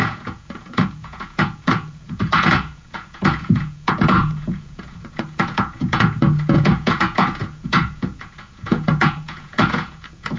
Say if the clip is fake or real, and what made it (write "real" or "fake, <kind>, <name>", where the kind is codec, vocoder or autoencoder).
fake, vocoder, Vocos